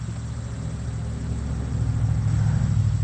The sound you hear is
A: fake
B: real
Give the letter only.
B